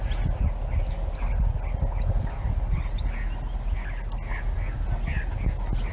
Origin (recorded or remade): recorded